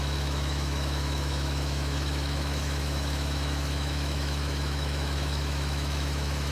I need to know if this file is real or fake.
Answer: fake